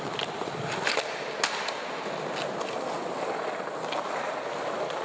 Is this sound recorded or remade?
recorded